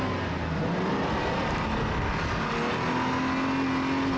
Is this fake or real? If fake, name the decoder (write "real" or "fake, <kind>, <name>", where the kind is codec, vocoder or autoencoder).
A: real